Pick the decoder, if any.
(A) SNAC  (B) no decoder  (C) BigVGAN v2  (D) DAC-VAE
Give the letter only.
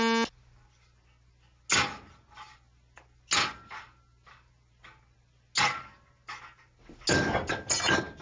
B